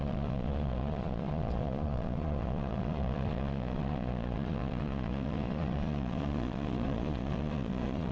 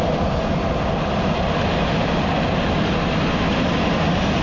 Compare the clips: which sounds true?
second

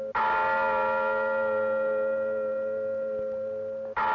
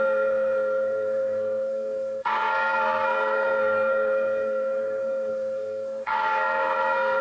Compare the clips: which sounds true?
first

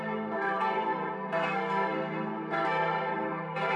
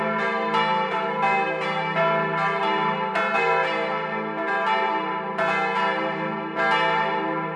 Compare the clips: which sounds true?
second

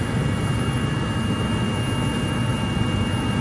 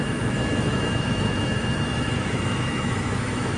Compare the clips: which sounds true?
first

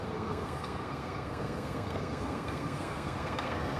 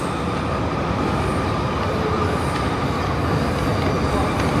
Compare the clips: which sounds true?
second